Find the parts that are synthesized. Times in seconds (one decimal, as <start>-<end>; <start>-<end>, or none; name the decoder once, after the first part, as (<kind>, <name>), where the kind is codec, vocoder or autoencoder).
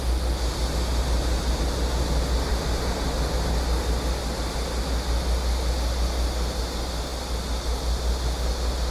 none